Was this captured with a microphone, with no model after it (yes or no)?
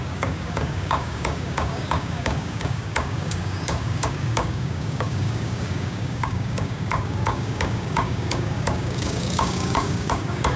no